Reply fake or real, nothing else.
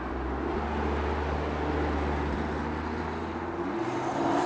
real